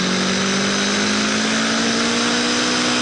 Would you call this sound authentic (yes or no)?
yes